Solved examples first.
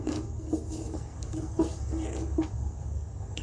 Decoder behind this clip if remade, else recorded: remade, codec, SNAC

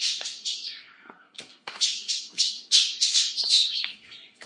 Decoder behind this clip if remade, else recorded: remade, codec, SNAC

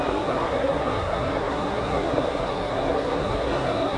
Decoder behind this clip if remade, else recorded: remade, codec, SNAC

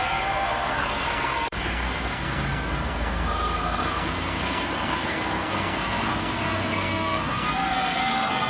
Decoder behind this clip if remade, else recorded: remade, codec, SNAC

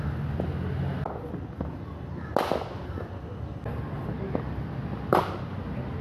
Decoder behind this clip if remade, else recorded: recorded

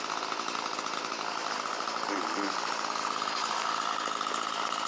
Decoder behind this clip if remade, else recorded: recorded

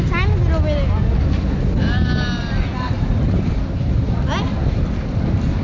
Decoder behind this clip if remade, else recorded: recorded